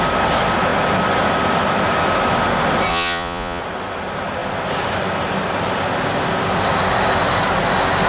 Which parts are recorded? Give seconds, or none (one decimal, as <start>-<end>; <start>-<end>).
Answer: 0.0-2.9; 3.6-8.1